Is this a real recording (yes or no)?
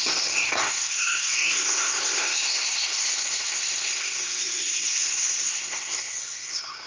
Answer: no